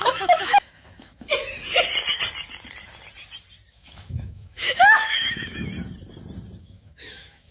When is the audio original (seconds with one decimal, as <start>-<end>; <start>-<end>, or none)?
1.3-3.7; 5.7-6.6